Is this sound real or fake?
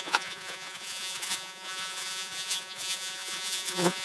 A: fake